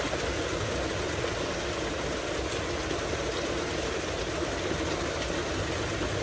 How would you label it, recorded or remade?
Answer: recorded